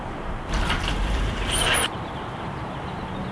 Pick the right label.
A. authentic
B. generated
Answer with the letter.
B